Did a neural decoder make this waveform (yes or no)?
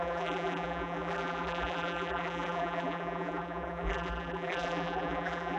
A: yes